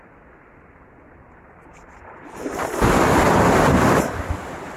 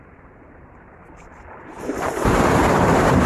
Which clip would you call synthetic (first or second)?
second